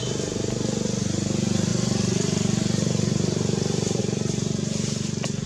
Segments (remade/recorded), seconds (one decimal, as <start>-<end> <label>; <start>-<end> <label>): 0.0-1.7 recorded; 1.7-4.0 remade; 4.0-5.5 recorded